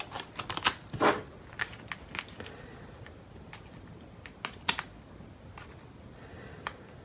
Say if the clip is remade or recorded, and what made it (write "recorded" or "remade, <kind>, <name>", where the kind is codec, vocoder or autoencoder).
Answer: recorded